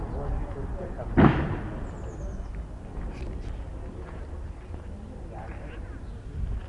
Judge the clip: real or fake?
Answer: real